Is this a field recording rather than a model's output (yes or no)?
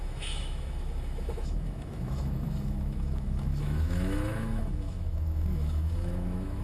no